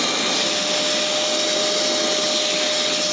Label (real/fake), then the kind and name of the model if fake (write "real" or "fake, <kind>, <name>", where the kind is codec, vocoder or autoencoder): real